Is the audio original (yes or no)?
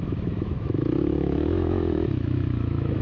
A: no